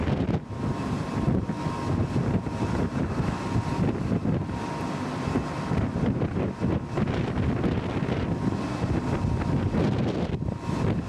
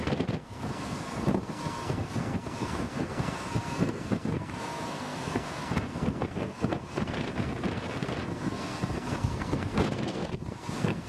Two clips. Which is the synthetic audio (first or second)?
second